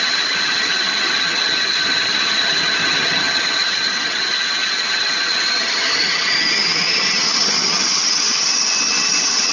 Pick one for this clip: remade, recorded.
remade